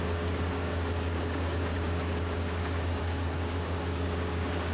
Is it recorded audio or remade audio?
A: remade